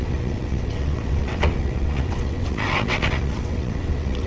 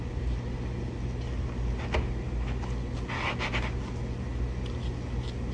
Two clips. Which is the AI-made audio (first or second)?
first